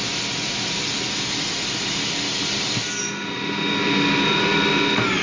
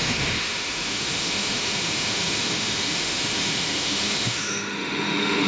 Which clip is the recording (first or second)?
first